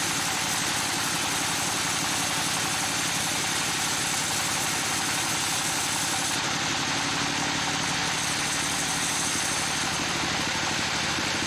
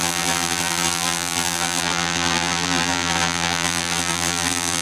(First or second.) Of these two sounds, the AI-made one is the second